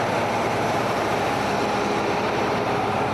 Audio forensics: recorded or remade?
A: remade